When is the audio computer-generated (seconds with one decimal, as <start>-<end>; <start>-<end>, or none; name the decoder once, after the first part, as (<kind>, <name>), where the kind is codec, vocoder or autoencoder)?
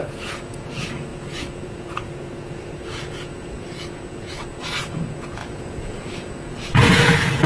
0.0-7.5 (vocoder, Vocos)